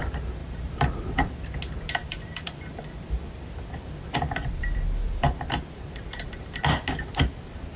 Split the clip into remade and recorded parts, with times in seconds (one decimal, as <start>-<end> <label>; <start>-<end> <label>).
0.0-0.4 recorded; 0.4-1.4 remade; 1.4-2.0 recorded; 2.0-6.6 remade; 6.6-7.8 recorded